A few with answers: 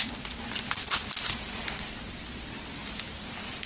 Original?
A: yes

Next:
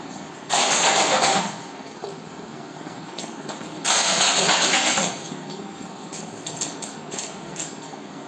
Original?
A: no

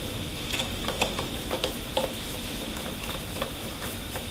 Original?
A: no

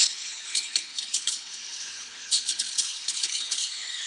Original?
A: no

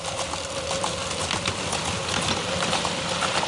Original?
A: yes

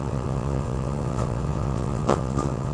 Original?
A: no